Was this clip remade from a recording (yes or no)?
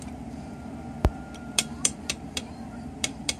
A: yes